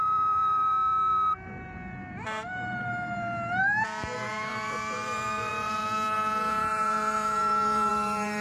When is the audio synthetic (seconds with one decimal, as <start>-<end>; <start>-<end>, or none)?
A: 0.0-8.4